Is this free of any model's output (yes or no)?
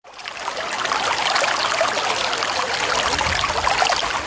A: yes